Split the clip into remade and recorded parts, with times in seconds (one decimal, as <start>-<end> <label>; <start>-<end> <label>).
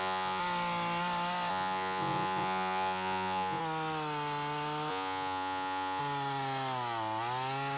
0.0-0.4 remade; 0.4-1.5 recorded; 1.5-3.6 remade; 3.6-4.9 recorded; 4.9-6.0 remade; 6.0-7.8 recorded